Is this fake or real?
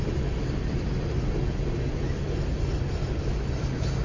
real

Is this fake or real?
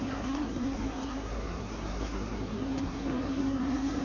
fake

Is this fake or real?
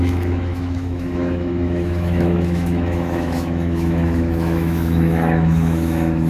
fake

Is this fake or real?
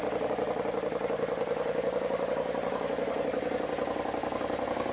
real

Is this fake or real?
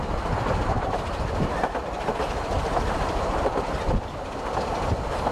fake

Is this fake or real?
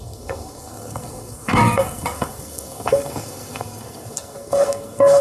fake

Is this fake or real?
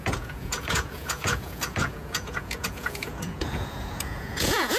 fake